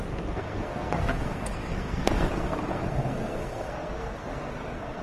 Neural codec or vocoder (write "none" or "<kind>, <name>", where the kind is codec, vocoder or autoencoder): codec, SNAC